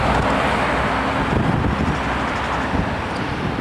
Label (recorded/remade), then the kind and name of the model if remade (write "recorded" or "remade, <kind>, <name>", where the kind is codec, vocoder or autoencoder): recorded